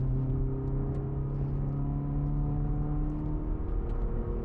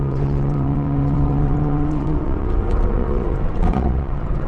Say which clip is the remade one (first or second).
second